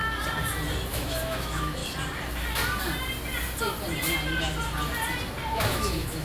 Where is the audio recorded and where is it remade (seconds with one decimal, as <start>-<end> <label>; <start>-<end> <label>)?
0.0-0.9 recorded; 0.9-1.8 remade; 1.8-5.5 recorded; 5.5-6.2 remade